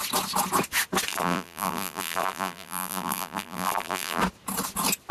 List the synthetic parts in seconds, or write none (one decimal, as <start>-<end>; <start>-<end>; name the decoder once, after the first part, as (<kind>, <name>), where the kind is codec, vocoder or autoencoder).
1.1-4.2 (vocoder, BigVGAN v2)